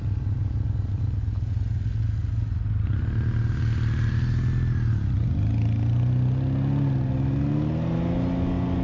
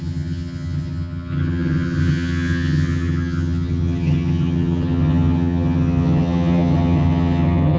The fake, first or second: second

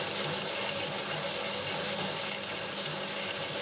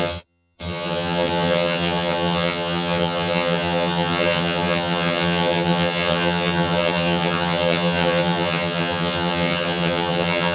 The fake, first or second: second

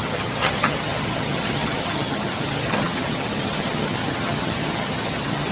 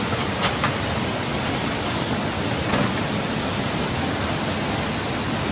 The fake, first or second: first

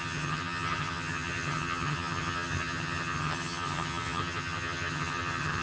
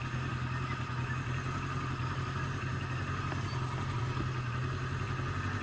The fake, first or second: first